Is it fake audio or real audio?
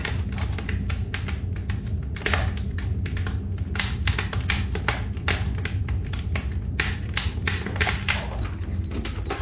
real